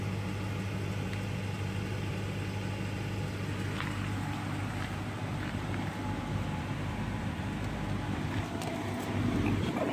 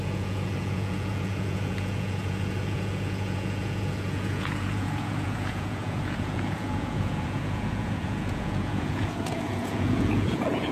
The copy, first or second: second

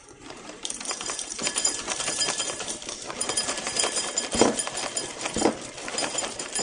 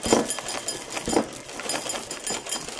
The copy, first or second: first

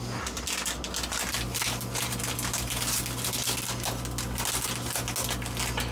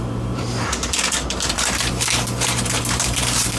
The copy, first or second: second